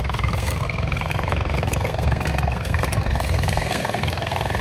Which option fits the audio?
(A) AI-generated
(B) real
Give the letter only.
A